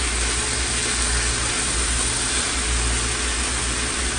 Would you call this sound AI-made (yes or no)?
no